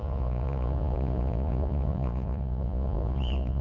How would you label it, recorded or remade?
remade